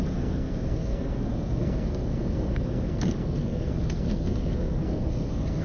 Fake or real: fake